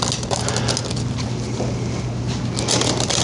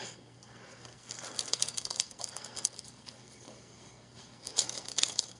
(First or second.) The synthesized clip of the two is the second